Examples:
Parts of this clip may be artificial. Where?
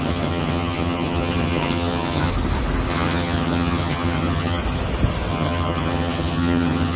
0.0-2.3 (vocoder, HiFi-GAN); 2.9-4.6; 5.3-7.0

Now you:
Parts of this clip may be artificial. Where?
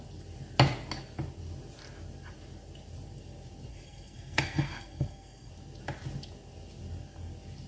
3.7-5.5 (codec, SNAC)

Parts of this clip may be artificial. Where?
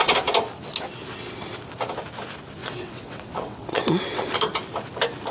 2.6-4.4 (vocoder, WaveNeXt)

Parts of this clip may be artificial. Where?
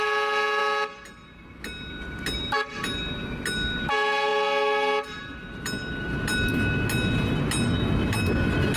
none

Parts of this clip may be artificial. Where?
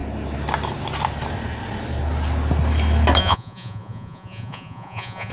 3.2-5.3 (vocoder, Vocos)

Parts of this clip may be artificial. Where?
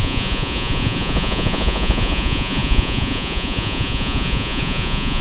0.0-5.2 (vocoder, Vocos)